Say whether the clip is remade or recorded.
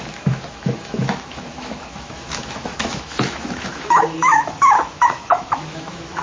remade